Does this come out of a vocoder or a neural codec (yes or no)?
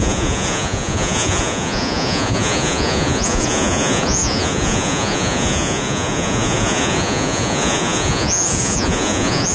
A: yes